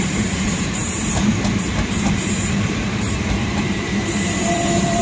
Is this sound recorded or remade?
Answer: remade